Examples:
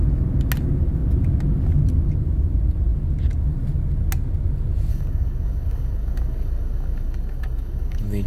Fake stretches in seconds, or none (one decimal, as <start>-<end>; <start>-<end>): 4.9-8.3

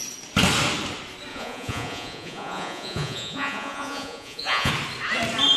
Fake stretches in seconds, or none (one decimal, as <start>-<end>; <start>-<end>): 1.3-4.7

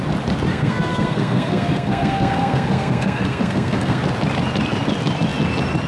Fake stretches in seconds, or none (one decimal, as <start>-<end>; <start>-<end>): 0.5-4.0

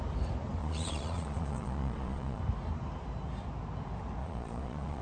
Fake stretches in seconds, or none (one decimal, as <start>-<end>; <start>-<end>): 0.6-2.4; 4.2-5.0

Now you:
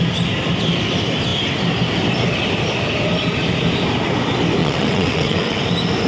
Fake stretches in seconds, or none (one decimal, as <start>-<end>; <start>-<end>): 4.6-5.6